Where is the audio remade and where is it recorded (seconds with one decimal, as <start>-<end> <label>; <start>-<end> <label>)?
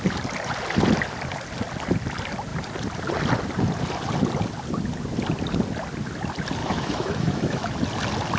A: 0.0-6.6 recorded; 6.6-7.7 remade; 7.7-8.4 recorded